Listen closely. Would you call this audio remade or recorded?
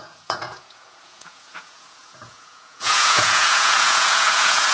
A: remade